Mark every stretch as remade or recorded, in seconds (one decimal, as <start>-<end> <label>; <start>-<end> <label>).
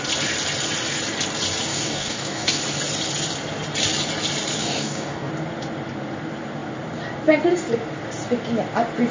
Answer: 0.0-1.7 recorded; 1.7-2.6 remade; 2.6-4.6 recorded; 4.6-5.3 remade; 5.3-9.1 recorded